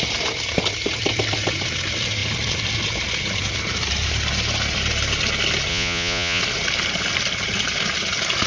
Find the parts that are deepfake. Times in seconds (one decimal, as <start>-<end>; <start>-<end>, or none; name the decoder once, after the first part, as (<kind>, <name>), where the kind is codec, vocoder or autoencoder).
5.7-6.4 (vocoder, Vocos)